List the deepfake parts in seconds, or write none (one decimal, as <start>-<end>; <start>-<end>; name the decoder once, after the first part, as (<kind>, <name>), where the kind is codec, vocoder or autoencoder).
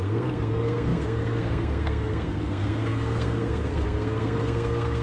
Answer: 0.0-5.0 (codec, SNAC)